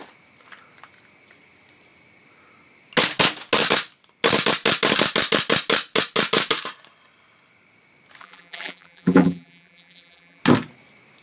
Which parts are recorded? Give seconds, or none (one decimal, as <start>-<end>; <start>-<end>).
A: 0.0-8.2; 10.4-11.2